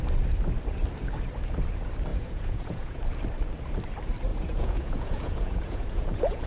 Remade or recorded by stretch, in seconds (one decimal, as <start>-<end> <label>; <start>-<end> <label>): 0.0-2.1 recorded; 2.1-3.0 remade; 3.0-4.3 recorded; 4.3-6.5 remade